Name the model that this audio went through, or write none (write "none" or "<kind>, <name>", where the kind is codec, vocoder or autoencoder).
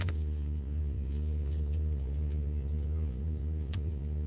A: vocoder, Vocos